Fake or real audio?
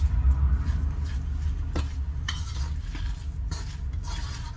real